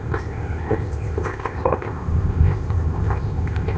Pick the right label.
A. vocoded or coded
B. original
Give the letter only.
A